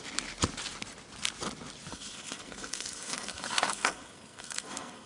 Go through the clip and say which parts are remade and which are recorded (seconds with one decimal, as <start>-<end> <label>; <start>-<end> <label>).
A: 0.0-1.9 recorded; 1.9-5.1 remade